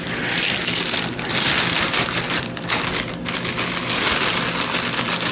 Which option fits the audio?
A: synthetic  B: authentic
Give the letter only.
B